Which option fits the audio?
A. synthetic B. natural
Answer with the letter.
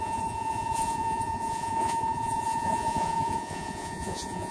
A